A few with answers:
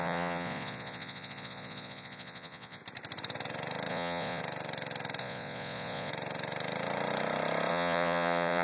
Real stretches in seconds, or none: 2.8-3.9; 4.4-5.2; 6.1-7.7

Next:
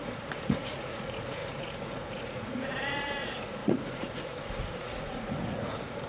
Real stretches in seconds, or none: none